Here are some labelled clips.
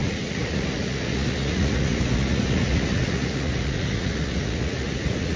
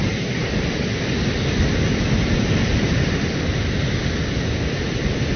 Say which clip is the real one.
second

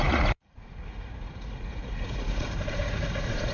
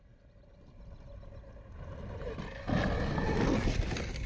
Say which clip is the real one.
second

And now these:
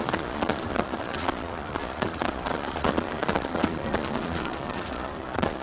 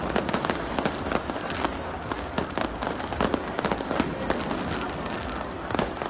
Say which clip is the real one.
second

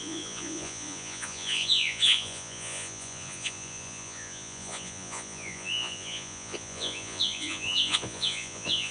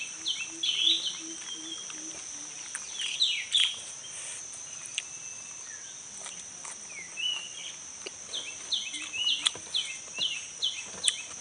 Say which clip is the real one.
second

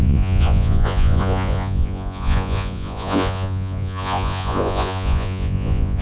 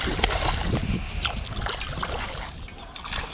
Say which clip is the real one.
second